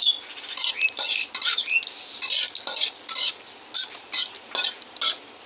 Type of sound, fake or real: real